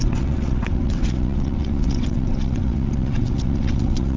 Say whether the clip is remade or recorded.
remade